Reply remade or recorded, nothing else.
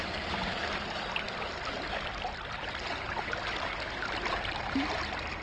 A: recorded